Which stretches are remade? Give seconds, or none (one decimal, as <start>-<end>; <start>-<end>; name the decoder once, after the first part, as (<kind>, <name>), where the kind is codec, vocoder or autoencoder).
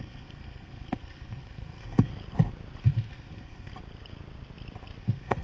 0.0-2.1 (codec, SNAC); 2.8-3.7; 5.0-5.4